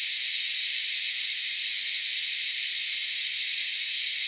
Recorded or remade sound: remade